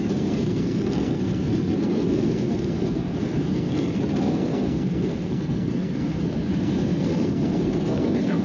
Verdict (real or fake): fake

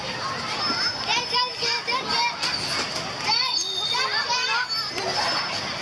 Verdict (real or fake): real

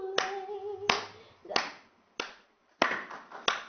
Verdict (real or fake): real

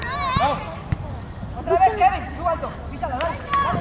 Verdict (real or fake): real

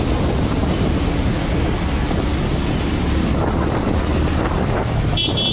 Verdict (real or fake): real